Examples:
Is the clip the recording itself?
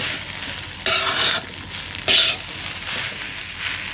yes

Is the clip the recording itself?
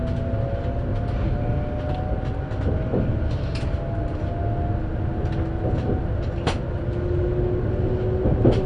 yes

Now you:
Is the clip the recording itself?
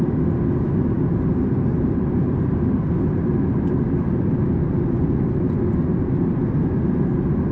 yes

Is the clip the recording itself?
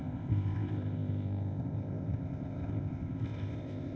no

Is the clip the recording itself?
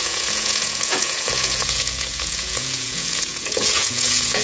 no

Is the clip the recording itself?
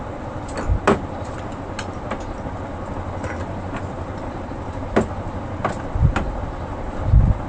yes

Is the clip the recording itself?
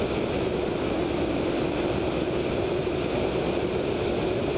yes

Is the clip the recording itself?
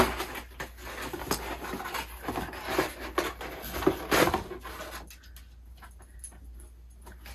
yes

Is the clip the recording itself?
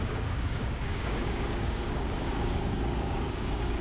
no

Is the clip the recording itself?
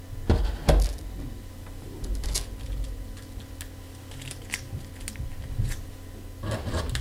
yes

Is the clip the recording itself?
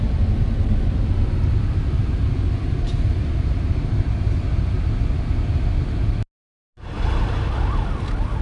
yes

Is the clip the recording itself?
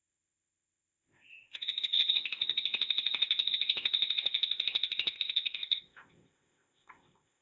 no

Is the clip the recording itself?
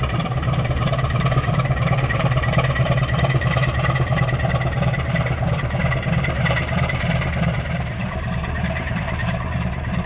no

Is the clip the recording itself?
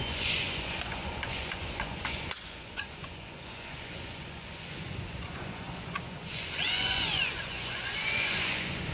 no